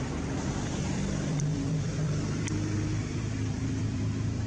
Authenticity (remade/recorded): remade